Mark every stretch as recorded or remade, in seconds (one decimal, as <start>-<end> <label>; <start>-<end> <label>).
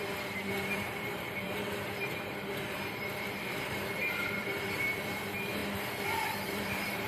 0.0-5.6 remade; 5.6-6.5 recorded; 6.5-7.1 remade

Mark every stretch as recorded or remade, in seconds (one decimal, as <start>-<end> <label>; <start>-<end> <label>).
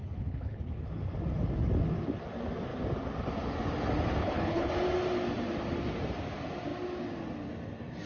0.0-0.8 remade; 0.8-4.2 recorded; 4.2-4.7 remade; 4.7-8.1 recorded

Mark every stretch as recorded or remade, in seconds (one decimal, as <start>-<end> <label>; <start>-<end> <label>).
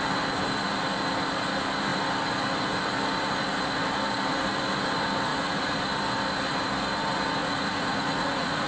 0.0-5.3 recorded; 5.3-5.8 remade; 5.8-7.4 recorded; 7.4-8.7 remade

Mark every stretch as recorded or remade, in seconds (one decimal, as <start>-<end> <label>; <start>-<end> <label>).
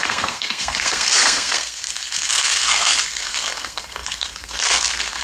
0.0-5.2 remade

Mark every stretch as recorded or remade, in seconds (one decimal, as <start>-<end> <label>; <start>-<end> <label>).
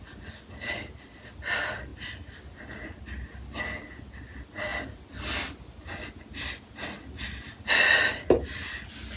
0.0-9.2 recorded